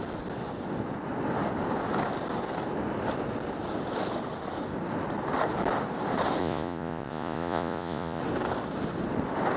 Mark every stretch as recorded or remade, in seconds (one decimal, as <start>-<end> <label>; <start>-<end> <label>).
0.0-6.4 recorded; 6.4-8.2 remade; 8.2-9.6 recorded